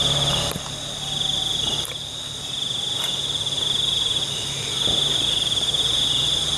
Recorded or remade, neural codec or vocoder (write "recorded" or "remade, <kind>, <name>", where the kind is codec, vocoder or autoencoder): recorded